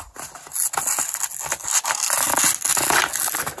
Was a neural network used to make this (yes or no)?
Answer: no